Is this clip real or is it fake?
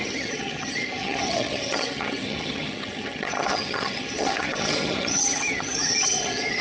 fake